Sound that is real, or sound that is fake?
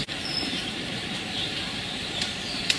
fake